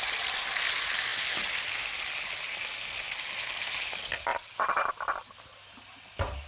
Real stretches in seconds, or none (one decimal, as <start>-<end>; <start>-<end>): 0.0-6.5